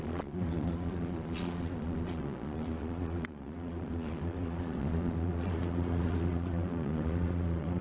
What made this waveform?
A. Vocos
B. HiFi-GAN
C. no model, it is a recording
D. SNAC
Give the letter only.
A